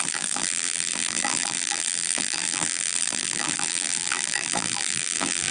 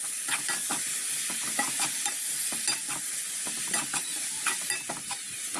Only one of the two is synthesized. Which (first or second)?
first